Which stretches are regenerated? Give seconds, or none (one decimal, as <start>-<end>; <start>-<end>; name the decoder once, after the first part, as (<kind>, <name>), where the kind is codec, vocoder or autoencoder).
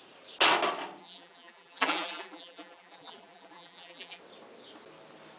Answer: 1.0-4.2 (vocoder, BigVGAN v2)